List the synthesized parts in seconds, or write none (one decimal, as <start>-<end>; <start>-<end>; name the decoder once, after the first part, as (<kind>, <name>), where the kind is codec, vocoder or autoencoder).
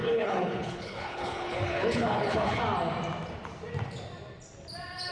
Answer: 0.0-2.6 (codec, HILCodec)